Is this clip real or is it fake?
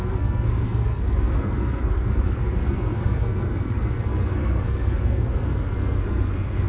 fake